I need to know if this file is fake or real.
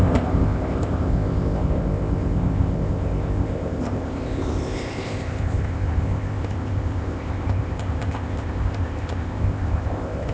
fake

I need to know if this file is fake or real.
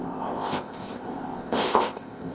fake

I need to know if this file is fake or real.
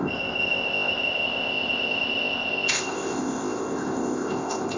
fake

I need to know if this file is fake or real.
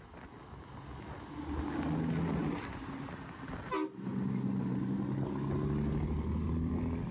real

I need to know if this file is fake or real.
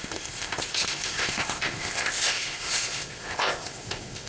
fake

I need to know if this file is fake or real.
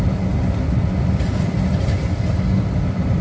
real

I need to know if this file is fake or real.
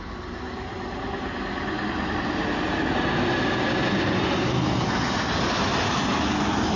real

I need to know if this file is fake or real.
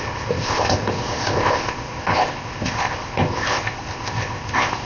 fake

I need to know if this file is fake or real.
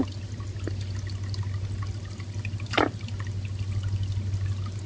real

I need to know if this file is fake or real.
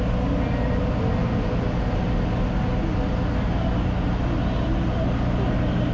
real